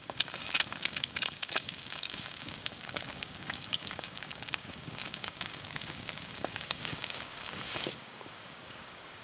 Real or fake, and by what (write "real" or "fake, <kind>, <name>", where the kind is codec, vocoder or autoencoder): fake, codec, DAC